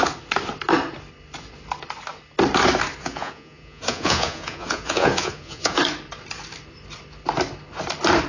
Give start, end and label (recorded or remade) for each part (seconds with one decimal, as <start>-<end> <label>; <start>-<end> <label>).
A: 0.0-3.0 recorded; 3.0-5.8 remade; 5.8-8.3 recorded